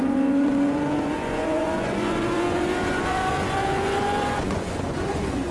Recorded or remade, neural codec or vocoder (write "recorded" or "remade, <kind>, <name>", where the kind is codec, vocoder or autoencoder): remade, vocoder, Vocos